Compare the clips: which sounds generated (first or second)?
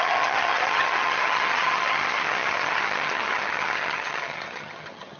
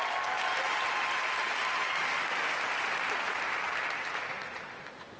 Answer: first